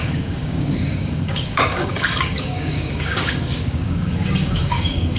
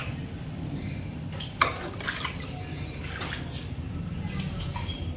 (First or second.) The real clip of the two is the second